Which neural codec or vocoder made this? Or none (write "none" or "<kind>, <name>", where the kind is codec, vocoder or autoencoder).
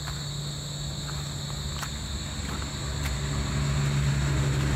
none